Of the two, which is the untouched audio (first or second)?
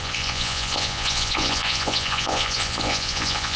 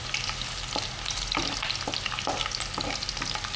second